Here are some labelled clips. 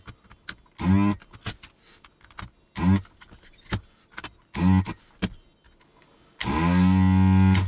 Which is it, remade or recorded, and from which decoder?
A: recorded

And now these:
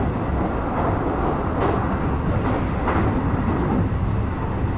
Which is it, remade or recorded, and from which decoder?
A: recorded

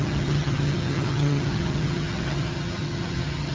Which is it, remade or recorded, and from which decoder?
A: remade, vocoder, HiFi-GAN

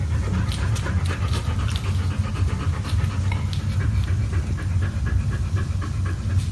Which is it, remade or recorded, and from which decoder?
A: recorded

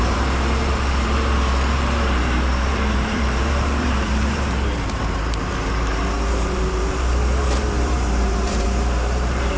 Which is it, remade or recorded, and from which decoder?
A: remade, vocoder, BigVGAN v2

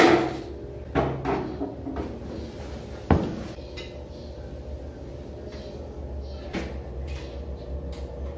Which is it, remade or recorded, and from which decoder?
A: recorded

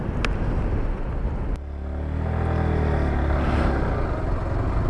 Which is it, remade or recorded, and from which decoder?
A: recorded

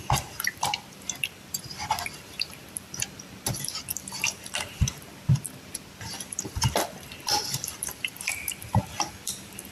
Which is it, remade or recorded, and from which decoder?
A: remade, vocoder, BigVGAN v2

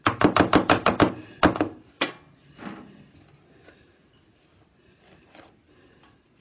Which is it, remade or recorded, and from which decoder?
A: recorded